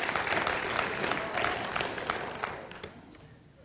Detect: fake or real real